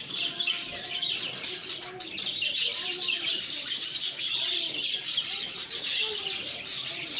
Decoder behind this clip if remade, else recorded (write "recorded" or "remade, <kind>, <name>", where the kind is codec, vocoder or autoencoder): remade, vocoder, BigVGAN v2